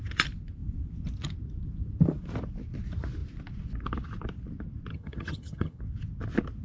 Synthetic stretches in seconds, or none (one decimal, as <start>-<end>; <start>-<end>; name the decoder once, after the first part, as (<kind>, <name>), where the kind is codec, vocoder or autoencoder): 4.9-5.8 (vocoder, HiFi-GAN)

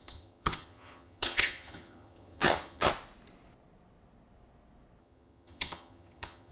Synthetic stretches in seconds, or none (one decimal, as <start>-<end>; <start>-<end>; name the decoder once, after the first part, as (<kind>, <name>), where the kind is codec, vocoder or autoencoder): 0.0-2.9 (vocoder, HiFi-GAN); 5.0-6.5